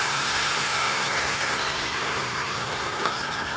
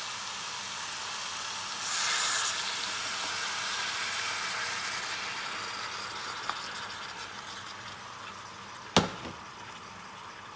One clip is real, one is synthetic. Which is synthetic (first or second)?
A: first